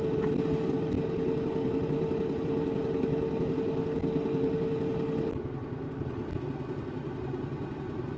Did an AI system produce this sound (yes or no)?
no